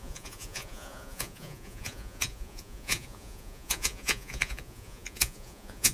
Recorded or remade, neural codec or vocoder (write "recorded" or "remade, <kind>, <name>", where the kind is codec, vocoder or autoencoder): remade, vocoder, Vocos